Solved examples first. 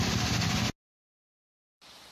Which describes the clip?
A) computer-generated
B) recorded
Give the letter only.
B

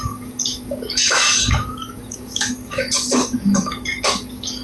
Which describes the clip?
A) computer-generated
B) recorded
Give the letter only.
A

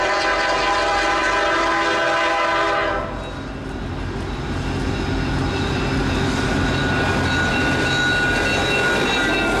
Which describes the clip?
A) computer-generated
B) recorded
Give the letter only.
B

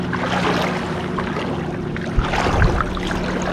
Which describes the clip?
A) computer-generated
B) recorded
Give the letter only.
B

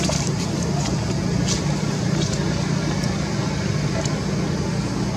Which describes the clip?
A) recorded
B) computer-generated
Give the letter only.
A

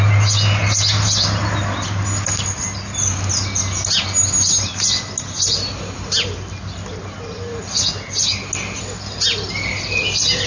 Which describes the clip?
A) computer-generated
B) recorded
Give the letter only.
B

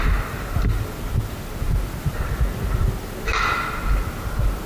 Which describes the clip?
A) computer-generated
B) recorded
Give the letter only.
B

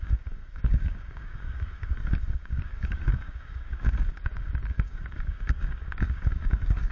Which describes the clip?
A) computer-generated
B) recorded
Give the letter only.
A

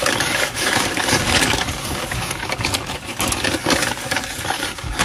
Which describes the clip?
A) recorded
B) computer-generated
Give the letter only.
B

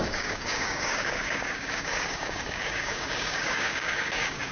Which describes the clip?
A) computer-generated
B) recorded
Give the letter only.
A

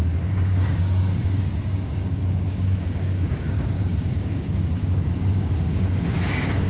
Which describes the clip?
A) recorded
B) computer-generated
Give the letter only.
B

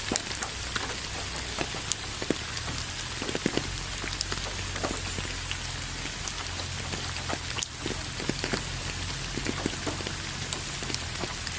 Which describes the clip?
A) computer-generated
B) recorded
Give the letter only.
B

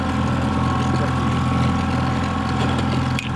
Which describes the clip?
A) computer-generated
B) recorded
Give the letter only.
B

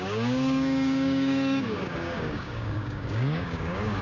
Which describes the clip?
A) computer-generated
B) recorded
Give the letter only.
A